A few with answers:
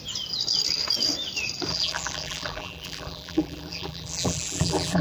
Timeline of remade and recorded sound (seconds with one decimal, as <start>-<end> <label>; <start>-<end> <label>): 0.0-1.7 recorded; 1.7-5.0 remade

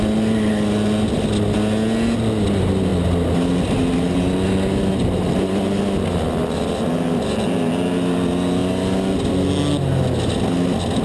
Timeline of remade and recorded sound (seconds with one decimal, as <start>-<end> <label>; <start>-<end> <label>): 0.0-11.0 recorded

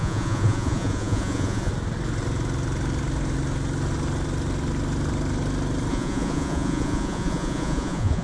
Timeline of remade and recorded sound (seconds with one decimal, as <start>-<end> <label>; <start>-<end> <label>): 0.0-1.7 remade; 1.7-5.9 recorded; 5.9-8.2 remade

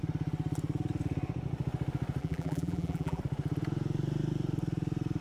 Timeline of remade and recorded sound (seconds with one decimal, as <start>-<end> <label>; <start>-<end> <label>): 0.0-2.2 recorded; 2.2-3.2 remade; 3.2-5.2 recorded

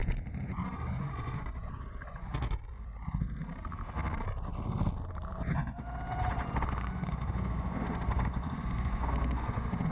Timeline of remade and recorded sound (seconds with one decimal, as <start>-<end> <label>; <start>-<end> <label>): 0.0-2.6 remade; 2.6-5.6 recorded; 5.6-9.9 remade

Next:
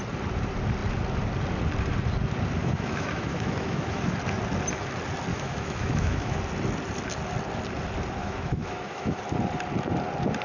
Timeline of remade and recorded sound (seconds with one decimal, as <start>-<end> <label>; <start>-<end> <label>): 0.0-2.6 recorded; 2.6-4.0 remade; 4.0-5.3 recorded; 5.3-6.4 remade; 6.4-8.2 recorded; 8.2-9.2 remade; 9.2-10.4 recorded